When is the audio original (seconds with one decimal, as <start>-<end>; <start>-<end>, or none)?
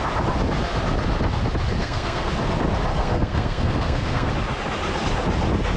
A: 0.0-1.8; 2.3-2.9; 4.3-5.8